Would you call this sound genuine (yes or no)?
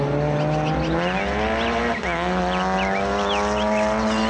yes